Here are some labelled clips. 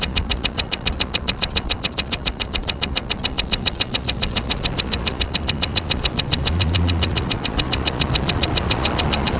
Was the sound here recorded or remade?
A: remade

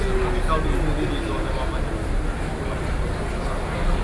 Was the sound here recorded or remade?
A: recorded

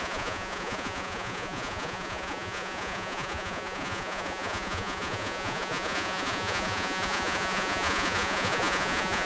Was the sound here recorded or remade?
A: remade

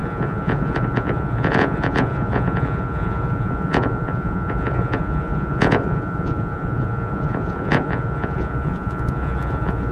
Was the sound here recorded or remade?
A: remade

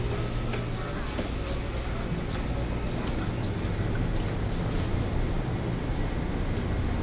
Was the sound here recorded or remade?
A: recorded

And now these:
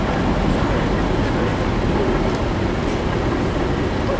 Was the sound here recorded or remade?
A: recorded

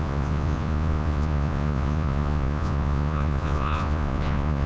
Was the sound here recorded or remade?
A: remade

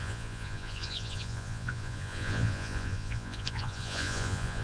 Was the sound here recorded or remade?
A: remade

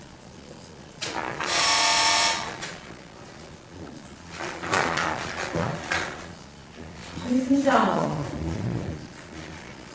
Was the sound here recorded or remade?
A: remade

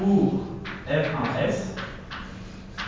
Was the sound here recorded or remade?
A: recorded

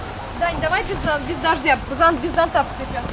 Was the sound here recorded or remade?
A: recorded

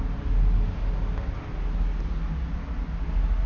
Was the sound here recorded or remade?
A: recorded